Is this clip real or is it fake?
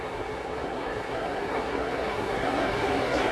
fake